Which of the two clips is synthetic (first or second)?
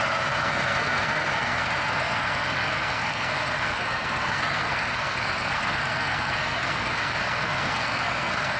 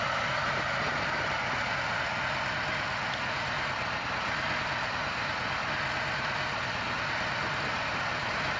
first